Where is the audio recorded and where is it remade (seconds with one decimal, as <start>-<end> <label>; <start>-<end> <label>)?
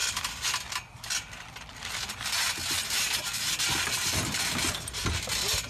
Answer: 0.0-5.7 recorded